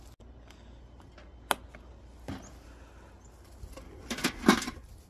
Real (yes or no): yes